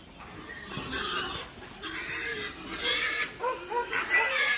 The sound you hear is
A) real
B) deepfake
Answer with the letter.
A